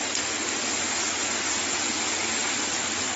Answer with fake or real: real